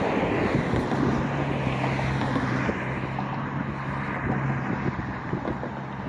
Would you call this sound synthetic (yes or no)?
no